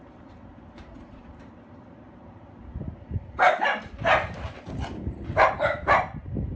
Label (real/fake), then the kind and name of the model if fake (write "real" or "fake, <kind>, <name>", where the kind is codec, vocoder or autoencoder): fake, vocoder, BigVGAN v2